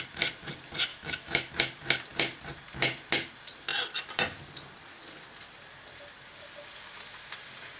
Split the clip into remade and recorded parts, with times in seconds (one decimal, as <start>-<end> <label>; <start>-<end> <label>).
0.0-0.9 recorded; 0.9-1.5 remade; 1.5-7.8 recorded